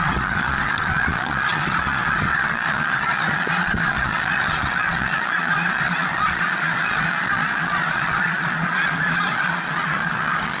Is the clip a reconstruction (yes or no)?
yes